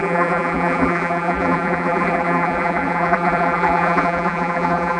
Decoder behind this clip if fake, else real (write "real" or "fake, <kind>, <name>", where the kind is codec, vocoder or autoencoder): fake, vocoder, BigVGAN v2